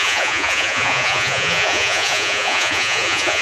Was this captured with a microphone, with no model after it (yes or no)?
no